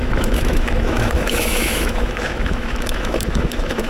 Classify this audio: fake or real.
fake